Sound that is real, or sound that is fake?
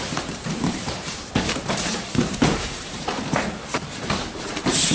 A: fake